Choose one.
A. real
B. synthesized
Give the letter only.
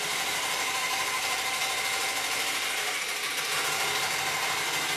A